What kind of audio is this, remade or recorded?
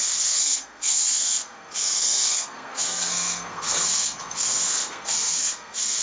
remade